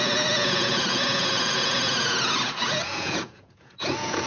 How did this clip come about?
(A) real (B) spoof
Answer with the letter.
B